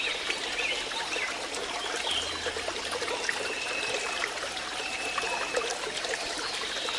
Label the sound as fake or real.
real